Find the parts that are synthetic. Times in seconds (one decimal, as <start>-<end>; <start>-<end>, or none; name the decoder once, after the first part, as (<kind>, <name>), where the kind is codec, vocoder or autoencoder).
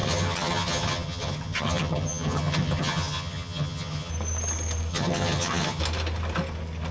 0.0-4.1 (vocoder, HiFi-GAN); 4.9-5.8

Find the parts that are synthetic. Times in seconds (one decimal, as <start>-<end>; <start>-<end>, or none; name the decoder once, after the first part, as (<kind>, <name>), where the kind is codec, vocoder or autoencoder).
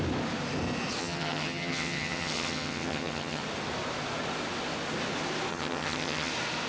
1.0-3.4 (vocoder, HiFi-GAN); 5.5-6.3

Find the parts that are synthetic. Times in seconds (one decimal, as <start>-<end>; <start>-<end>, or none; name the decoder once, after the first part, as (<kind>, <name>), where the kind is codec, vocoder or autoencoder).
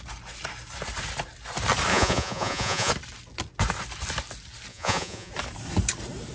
1.9-2.9 (vocoder, Vocos); 4.7-5.3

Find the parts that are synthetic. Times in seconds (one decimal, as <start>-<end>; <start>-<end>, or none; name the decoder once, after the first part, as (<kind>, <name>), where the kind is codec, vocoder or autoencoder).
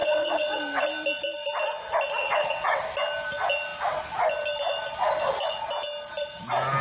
0.0-0.6 (vocoder, WaveNeXt); 2.2-2.8